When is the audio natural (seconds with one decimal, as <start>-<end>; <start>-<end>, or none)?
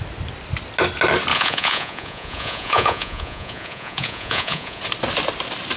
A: 0.0-1.3; 4.8-5.8